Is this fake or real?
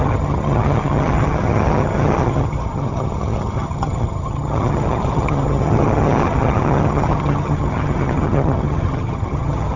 fake